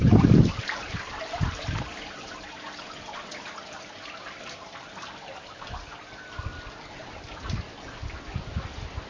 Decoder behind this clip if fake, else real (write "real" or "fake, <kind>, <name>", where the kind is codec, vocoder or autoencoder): real